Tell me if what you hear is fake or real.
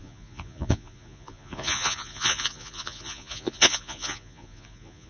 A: fake